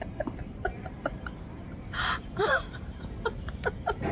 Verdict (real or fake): fake